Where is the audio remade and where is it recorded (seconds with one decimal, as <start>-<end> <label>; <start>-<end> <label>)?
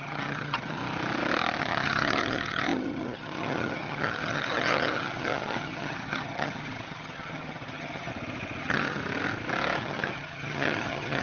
0.0-0.8 remade; 0.8-1.6 recorded; 1.6-8.1 remade; 8.1-8.6 recorded; 8.6-9.0 remade; 9.0-9.8 recorded; 9.8-11.2 remade